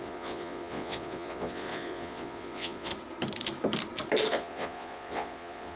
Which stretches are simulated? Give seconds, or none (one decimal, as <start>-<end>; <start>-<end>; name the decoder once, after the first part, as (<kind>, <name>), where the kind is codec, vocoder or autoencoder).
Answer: 0.0-2.9 (vocoder, Vocos); 4.3-5.8